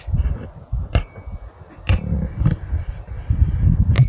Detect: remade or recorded recorded